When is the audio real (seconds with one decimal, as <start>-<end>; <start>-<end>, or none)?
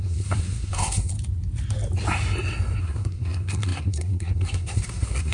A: 1.1-2.8